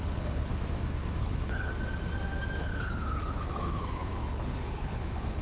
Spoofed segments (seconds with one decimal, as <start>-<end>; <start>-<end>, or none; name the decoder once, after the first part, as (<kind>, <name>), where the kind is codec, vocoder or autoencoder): 0.0-0.5 (codec, HILCodec); 1.2-1.7; 2.6-5.4